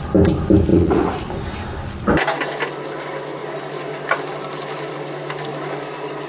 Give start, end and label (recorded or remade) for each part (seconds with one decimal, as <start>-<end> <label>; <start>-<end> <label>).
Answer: 0.0-0.7 recorded; 0.7-1.2 remade; 1.2-6.3 recorded